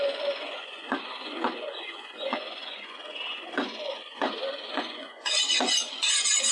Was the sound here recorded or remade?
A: remade